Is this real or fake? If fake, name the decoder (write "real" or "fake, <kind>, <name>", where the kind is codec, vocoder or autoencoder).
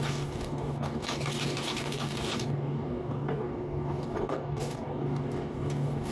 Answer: fake, codec, DAC